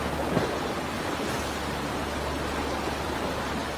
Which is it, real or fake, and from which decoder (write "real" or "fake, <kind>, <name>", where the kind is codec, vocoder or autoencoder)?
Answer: real